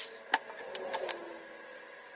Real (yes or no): yes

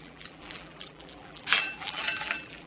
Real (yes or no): no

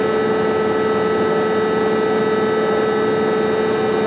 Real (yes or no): yes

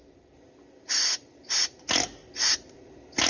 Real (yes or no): yes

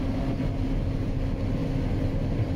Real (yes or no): yes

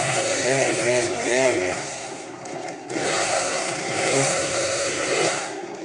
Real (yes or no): no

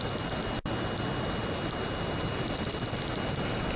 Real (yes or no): yes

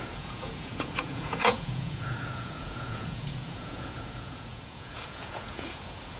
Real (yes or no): no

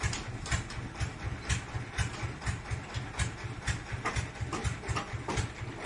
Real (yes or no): yes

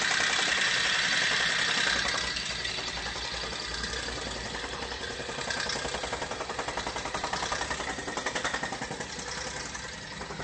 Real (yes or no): yes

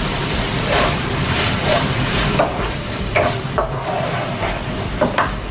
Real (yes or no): no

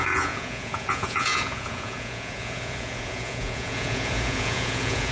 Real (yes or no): no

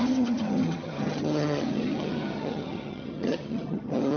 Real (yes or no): no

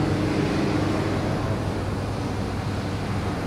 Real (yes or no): yes